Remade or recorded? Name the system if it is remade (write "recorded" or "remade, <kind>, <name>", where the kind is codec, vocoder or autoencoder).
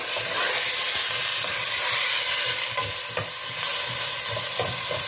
recorded